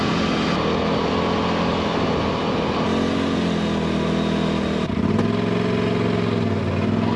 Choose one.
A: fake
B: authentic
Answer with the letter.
B